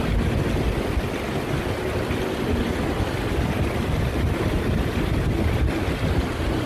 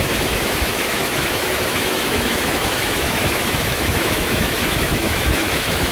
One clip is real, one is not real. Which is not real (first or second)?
second